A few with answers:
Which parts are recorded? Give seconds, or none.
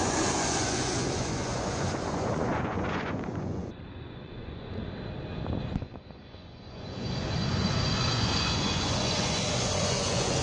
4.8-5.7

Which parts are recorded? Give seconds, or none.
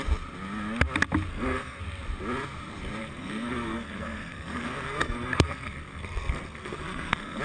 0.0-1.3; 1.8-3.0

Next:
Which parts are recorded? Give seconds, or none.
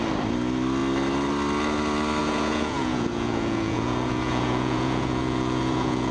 0.0-2.2